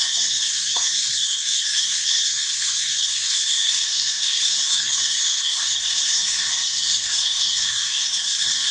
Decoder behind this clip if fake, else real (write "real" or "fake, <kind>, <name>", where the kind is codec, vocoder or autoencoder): fake, codec, SNAC